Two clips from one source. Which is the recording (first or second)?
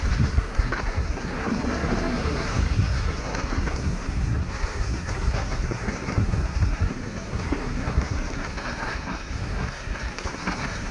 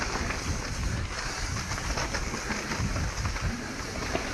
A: second